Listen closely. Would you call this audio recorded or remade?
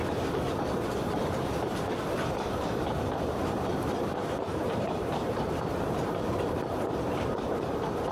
remade